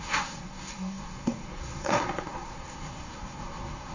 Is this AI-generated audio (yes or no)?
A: yes